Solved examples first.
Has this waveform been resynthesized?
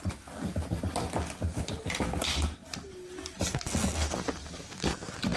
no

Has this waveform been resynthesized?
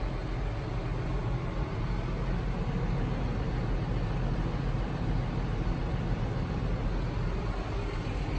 no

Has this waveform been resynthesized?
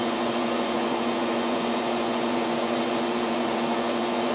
yes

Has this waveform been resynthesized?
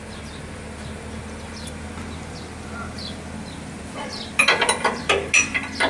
no